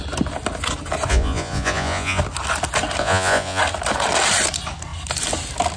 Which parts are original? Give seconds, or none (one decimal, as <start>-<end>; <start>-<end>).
0.0-1.1; 2.2-3.0; 3.6-5.8

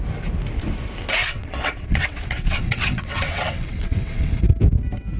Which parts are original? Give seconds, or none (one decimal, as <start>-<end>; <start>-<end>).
0.0-1.2; 4.3-5.2

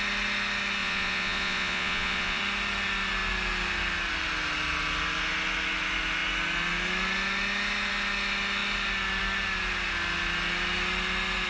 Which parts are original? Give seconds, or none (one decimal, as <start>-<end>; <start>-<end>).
0.0-0.8; 2.4-11.5